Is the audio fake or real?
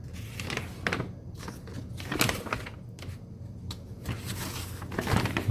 real